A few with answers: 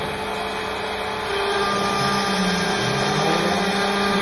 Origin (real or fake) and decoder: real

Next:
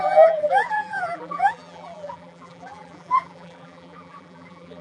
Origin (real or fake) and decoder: fake, vocoder, BigVGAN v2